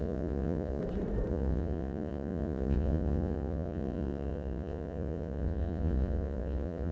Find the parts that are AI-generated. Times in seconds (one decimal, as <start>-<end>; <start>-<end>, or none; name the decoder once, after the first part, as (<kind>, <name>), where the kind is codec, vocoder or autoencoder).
0.0-0.8 (vocoder, Vocos); 1.3-6.9